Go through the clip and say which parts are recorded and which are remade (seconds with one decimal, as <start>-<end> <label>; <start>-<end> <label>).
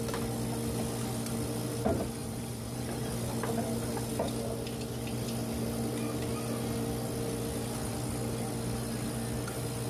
0.0-2.2 recorded; 2.2-3.1 remade; 3.1-9.9 recorded